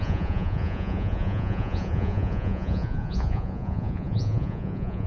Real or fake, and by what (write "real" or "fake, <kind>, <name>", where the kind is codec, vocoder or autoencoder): fake, vocoder, Vocos